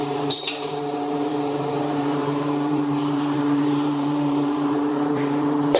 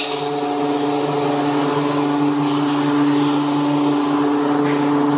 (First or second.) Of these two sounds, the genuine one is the second